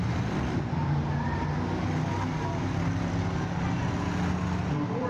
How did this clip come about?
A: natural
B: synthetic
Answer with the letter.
A